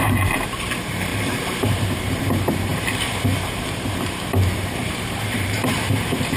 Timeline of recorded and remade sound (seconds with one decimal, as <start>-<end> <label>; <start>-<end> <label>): 0.0-6.4 remade